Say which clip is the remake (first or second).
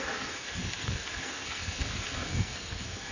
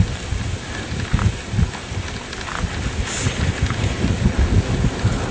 first